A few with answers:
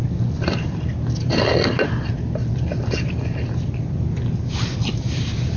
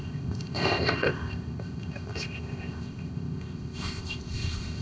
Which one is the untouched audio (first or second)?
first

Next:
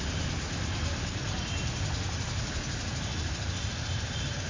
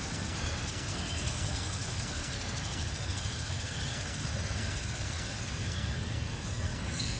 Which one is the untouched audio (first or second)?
first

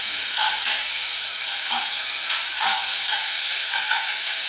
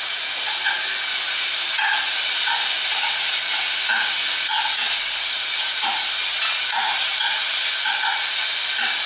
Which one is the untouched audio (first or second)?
second